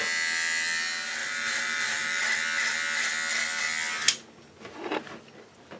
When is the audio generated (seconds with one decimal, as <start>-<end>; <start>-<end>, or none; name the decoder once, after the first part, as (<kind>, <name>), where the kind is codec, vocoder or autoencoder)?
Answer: 1.2-2.2 (vocoder, BigVGAN v2)